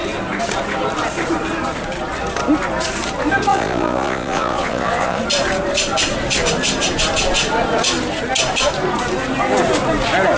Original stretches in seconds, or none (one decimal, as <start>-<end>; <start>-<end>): 0.0-3.5; 5.2-10.4